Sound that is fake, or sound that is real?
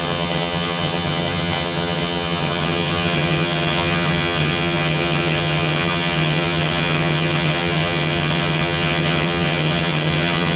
fake